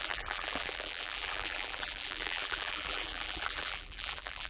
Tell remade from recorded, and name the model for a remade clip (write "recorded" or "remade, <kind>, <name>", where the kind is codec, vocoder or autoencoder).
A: remade, vocoder, BigVGAN v2